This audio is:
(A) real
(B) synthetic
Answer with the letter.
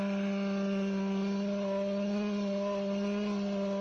A